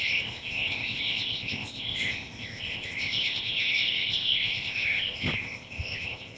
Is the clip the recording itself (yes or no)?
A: no